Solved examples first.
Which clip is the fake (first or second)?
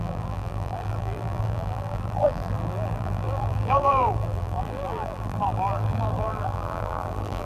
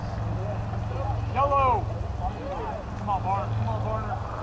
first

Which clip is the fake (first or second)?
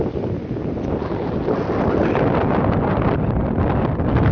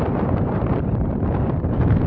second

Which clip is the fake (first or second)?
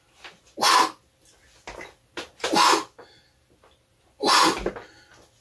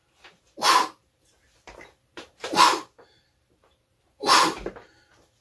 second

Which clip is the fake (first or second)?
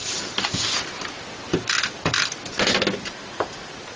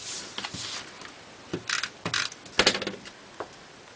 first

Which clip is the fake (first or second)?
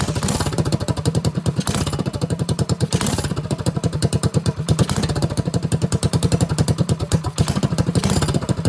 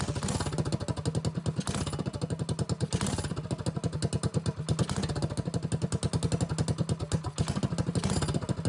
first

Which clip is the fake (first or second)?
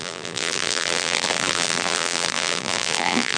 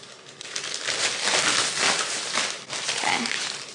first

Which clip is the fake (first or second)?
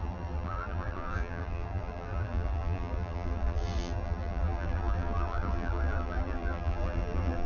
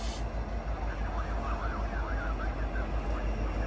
first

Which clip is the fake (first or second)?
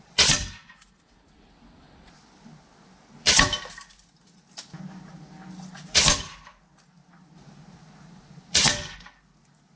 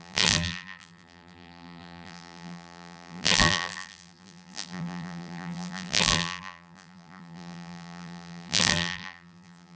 second